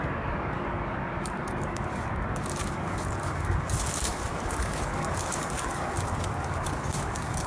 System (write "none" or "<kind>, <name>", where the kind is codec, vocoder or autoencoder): codec, DAC